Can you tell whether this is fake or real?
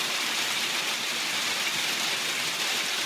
real